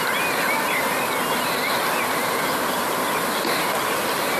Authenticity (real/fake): real